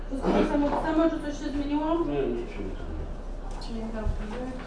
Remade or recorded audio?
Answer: recorded